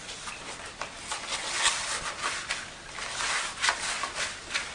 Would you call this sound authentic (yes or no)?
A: yes